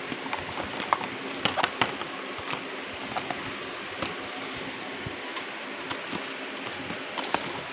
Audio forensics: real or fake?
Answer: real